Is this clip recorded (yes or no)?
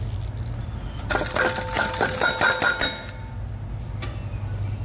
yes